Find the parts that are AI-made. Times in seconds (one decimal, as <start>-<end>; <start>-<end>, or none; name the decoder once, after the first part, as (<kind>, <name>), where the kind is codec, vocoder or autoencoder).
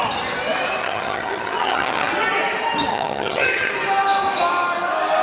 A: 0.8-2.1 (vocoder, HiFi-GAN); 2.9-3.7